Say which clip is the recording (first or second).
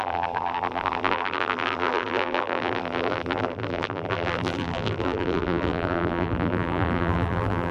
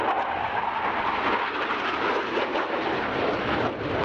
second